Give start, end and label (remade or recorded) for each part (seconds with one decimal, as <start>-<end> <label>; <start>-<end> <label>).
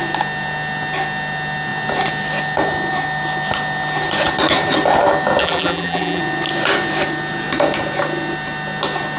0.0-5.4 recorded; 5.4-6.2 remade; 6.2-9.2 recorded